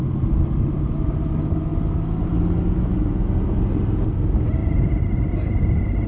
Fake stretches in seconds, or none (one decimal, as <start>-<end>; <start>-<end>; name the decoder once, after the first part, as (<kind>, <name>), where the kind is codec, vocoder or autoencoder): none